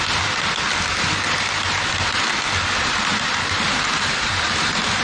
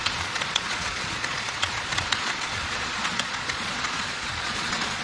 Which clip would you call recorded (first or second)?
first